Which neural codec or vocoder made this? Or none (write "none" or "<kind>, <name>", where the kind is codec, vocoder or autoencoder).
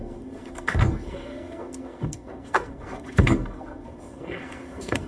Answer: codec, SNAC